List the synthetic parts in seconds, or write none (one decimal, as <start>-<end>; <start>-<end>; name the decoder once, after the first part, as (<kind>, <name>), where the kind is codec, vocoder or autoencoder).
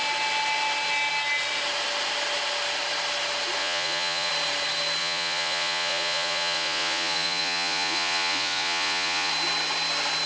3.6-4.3 (vocoder, Vocos); 5.0-9.3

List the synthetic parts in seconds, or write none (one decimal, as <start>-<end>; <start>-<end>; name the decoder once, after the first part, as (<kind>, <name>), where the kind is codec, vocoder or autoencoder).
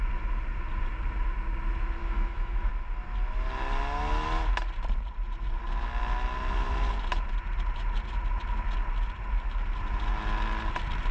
2.0-2.7 (autoencoder, DAC-VAE)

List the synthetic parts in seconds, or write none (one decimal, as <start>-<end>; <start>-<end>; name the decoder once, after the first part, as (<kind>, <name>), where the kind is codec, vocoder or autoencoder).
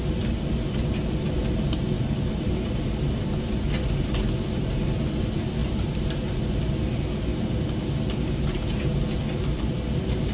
none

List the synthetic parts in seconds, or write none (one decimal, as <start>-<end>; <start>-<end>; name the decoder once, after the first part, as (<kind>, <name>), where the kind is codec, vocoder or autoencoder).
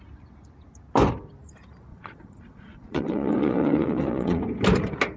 1.9-4.4 (vocoder, Vocos)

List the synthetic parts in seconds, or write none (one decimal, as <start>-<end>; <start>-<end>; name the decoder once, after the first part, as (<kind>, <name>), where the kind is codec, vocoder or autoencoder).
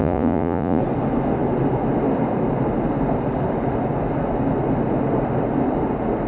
0.0-0.8 (vocoder, Vocos)